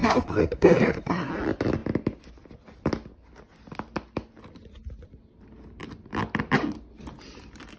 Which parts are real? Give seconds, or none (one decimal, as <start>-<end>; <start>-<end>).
1.3-7.8